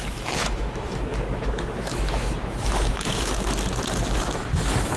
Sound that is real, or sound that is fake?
fake